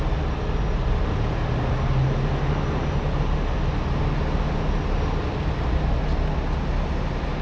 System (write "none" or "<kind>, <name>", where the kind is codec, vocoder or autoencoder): none